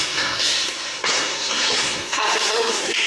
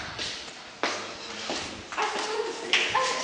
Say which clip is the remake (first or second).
first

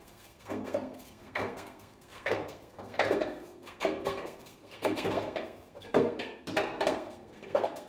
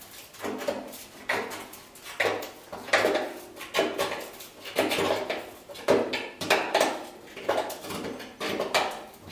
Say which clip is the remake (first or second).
first